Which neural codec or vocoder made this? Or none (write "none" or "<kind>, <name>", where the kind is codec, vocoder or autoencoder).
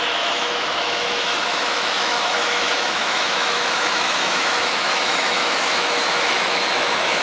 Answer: autoencoder, DAC-VAE